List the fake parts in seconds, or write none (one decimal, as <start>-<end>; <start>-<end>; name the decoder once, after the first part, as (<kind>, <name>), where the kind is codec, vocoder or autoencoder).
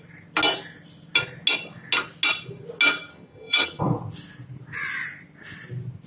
3.1-3.8 (vocoder, HiFi-GAN)